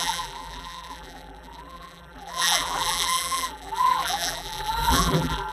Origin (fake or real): fake